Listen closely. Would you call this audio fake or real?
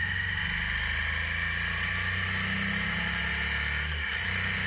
real